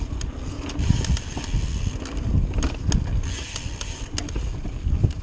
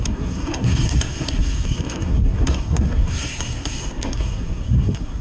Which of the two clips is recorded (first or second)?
first